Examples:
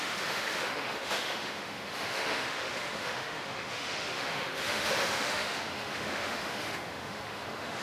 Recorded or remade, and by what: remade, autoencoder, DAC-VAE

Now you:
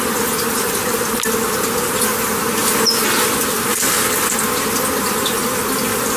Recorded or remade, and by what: recorded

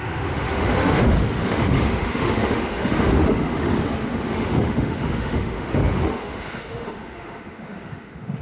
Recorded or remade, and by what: remade, autoencoder, DAC-VAE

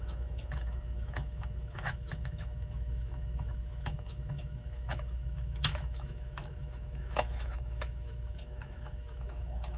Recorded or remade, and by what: remade, autoencoder, DAC-VAE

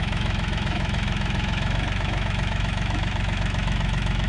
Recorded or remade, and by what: remade, autoencoder, DAC-VAE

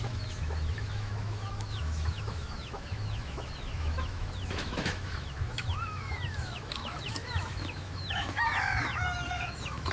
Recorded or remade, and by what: remade, autoencoder, DAC-VAE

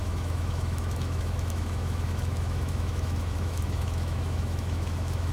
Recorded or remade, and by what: remade, autoencoder, DAC-VAE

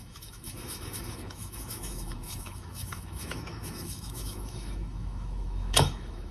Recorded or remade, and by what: remade, autoencoder, DAC-VAE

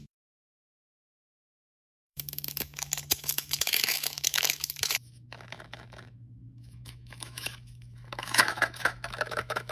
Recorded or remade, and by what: remade, autoencoder, DAC-VAE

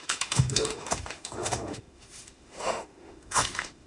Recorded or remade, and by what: remade, autoencoder, DAC-VAE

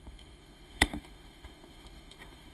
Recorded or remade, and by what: remade, autoencoder, DAC-VAE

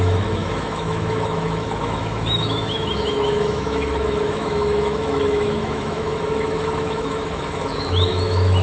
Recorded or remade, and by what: remade, autoencoder, DAC-VAE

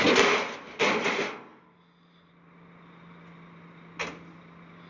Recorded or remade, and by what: recorded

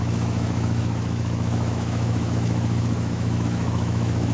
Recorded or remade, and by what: remade, autoencoder, DAC-VAE